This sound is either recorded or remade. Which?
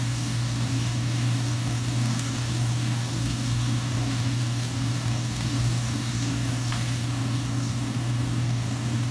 remade